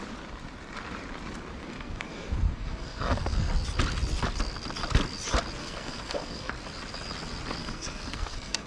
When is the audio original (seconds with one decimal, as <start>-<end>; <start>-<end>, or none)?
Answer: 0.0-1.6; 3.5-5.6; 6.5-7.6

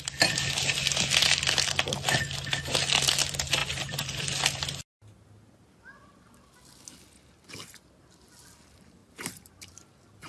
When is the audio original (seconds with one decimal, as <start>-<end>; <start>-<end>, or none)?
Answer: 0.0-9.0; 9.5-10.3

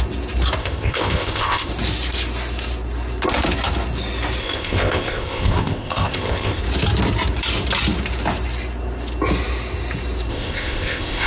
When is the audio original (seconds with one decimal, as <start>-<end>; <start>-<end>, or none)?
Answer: 0.0-0.6; 1.7-4.4; 6.6-10.3